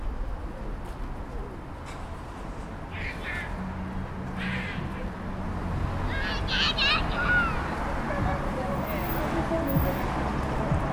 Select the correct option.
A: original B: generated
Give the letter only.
A